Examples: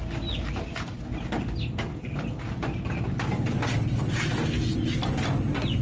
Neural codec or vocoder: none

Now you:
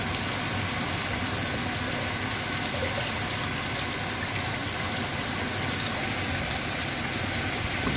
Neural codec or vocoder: none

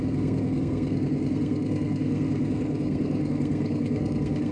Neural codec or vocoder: codec, SNAC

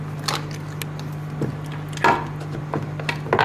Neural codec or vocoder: none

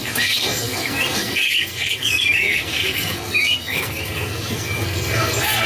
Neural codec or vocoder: codec, SNAC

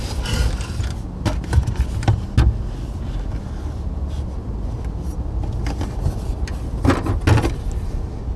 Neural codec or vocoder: none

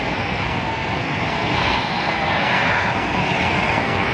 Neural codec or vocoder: codec, SNAC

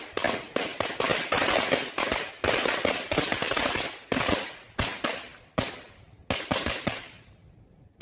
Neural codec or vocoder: none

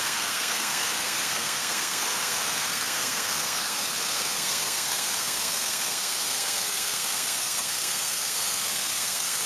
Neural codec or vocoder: codec, SNAC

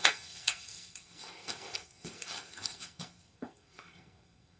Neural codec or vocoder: codec, SNAC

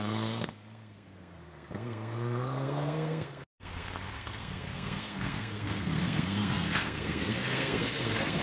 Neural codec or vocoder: codec, SNAC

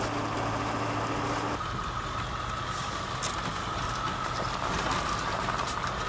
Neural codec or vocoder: none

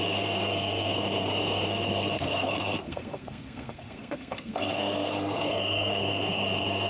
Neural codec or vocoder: codec, SNAC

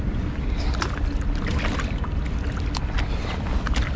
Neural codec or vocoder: none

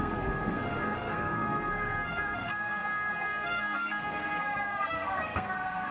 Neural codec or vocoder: codec, SNAC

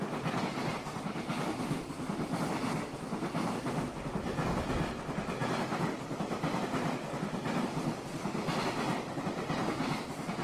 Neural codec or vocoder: none